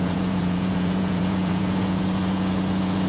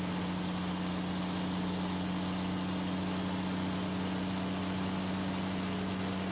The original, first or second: second